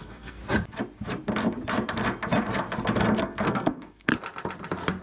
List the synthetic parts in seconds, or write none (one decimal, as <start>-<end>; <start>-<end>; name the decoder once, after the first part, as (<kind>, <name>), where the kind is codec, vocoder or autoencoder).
0.0-0.4 (codec, SNAC); 3.2-4.1

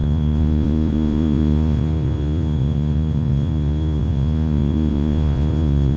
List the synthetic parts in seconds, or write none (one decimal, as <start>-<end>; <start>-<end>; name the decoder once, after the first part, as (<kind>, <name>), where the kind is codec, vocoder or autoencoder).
0.0-6.0 (vocoder, Vocos)

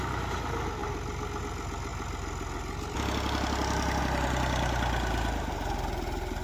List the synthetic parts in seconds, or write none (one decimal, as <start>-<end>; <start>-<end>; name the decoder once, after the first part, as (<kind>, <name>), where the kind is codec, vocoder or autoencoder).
none

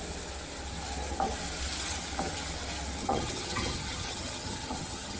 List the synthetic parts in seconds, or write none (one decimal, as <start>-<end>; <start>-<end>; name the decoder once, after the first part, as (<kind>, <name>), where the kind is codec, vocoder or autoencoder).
3.0-5.2 (vocoder, HiFi-GAN)

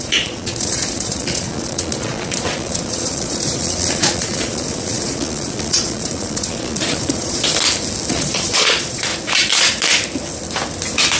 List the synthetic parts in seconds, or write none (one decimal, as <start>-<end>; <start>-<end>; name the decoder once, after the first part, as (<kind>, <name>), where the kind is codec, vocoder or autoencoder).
0.0-7.5 (vocoder, Vocos); 8.1-9.1